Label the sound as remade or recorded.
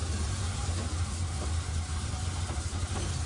recorded